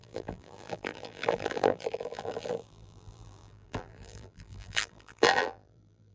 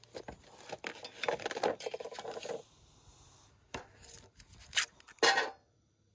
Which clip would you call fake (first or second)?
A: first